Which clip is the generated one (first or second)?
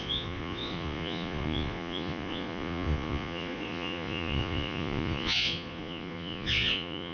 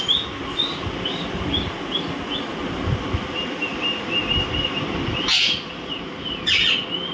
first